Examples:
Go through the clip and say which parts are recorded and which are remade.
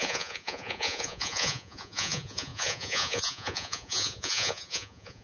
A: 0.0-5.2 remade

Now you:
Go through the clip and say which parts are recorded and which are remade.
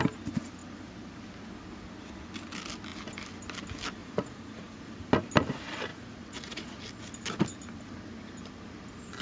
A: 0.0-4.0 recorded; 4.0-4.8 remade; 4.8-5.9 recorded; 5.9-6.8 remade; 6.8-9.2 recorded